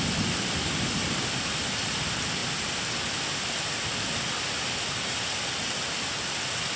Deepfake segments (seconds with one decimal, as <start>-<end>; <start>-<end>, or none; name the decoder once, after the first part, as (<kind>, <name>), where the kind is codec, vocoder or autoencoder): none